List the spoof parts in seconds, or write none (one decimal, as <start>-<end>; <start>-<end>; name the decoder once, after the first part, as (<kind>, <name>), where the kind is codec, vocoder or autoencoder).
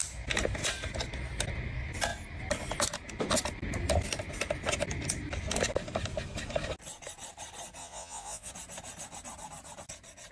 7.8-8.5 (vocoder, Vocos)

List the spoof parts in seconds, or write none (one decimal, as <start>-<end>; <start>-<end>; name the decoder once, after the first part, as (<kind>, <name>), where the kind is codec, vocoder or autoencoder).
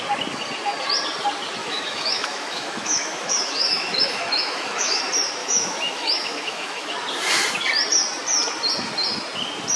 1.6-5.0 (autoencoder, DAC-VAE); 5.4-6.9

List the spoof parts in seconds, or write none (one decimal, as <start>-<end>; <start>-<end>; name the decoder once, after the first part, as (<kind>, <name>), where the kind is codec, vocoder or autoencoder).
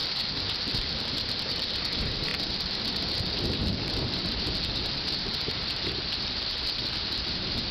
none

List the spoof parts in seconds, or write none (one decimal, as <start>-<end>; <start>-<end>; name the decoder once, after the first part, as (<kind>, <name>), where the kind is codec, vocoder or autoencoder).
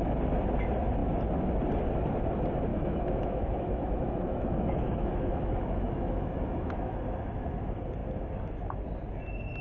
2.7-7.0 (autoencoder, DAC-VAE)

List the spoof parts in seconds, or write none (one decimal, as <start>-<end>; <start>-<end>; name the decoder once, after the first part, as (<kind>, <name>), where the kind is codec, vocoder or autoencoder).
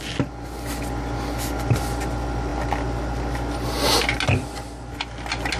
none